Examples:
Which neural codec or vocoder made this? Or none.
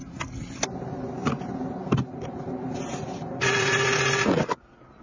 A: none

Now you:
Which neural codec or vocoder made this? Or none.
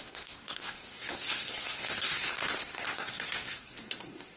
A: codec, SNAC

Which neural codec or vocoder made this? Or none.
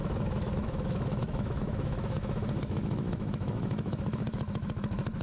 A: autoencoder, DAC-VAE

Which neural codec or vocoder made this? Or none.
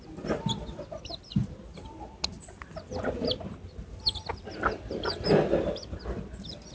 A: none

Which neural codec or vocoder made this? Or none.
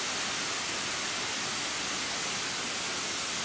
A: none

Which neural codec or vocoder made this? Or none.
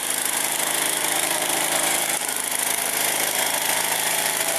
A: vocoder, BigVGAN v2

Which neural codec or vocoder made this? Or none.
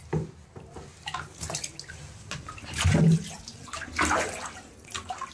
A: none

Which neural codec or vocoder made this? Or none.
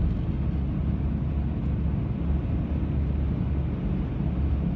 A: none